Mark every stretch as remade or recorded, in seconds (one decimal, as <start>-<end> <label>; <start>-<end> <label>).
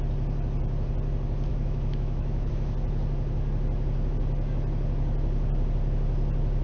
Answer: 0.0-1.5 recorded; 1.5-2.5 remade; 2.5-6.6 recorded